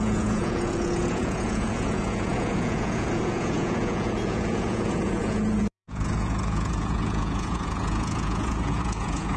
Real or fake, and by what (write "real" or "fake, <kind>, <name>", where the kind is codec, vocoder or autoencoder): fake, vocoder, Vocos